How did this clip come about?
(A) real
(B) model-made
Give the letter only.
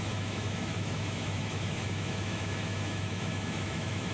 B